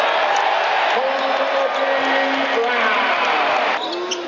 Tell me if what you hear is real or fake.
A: real